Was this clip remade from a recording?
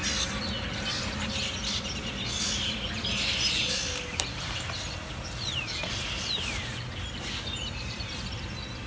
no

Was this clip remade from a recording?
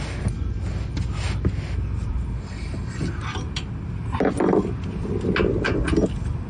no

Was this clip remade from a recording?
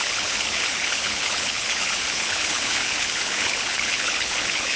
yes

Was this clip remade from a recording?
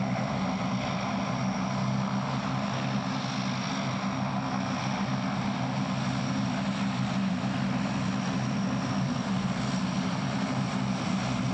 no